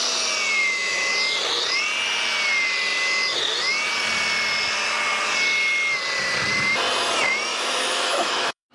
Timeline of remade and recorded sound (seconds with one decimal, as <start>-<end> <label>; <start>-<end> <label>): 0.0-0.6 recorded; 0.6-1.1 remade; 1.1-7.5 recorded; 7.5-8.7 remade

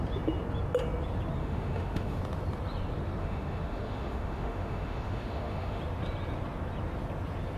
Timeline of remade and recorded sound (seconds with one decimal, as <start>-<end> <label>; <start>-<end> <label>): 0.0-1.4 recorded; 1.4-2.2 remade; 2.2-3.2 recorded; 3.2-5.8 remade; 5.8-7.6 recorded

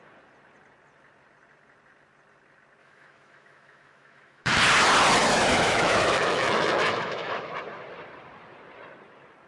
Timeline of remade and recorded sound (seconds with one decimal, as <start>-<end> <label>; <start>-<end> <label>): 0.0-2.8 recorded; 2.8-4.5 remade; 4.5-5.2 recorded; 5.2-7.5 remade; 7.5-9.5 recorded

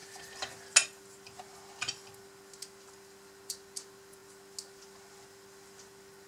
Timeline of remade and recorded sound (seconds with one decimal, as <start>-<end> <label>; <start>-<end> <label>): 0.0-6.3 recorded

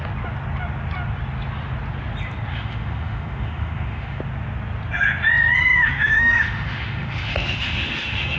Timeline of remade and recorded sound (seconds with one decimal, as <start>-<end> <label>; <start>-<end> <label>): 0.0-2.5 recorded; 2.5-4.2 remade; 4.2-5.6 recorded; 5.6-8.4 remade

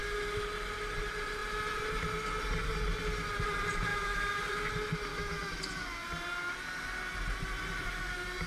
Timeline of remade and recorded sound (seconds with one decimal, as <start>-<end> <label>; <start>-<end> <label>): 0.0-3.9 recorded; 3.9-4.4 remade; 4.4-5.1 recorded; 5.1-5.6 remade; 5.6-8.5 recorded

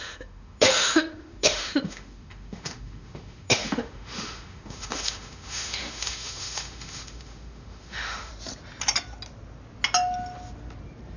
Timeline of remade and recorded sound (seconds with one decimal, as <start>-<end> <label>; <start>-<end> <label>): 0.0-8.3 remade; 8.3-11.2 recorded